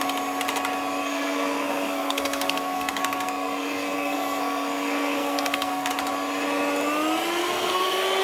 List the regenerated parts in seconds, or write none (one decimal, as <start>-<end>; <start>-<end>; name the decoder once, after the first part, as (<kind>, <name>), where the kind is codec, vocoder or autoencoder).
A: 1.0-5.9 (codec, SNAC); 7.4-8.2